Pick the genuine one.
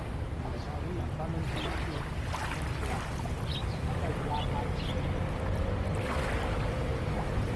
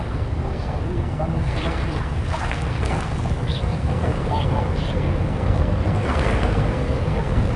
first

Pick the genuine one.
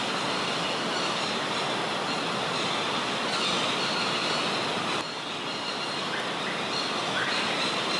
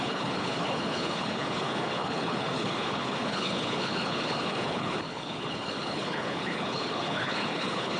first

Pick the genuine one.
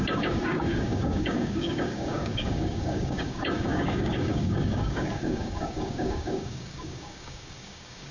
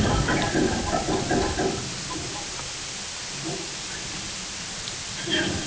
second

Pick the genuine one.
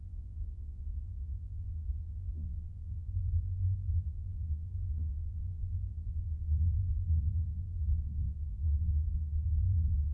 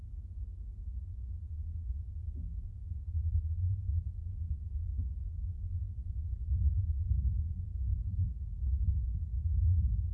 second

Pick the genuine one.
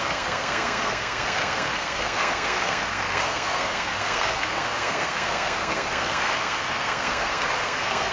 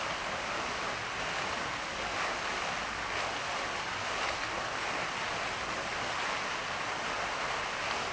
second